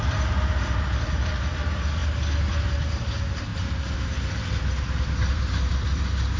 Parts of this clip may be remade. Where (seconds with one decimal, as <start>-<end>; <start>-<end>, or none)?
0.0-2.0; 2.5-3.5; 4.3-6.4